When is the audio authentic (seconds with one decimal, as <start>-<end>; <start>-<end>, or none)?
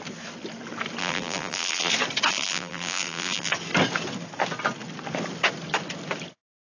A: 0.0-1.0; 1.9-2.3; 3.5-6.7